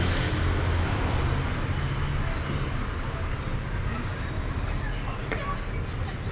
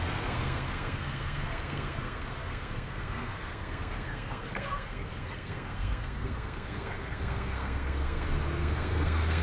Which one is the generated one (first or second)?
second